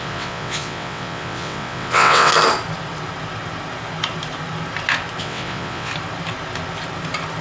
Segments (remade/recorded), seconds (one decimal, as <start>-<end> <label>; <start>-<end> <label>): 0.0-2.3 remade; 2.3-5.2 recorded; 5.2-5.9 remade; 5.9-7.4 recorded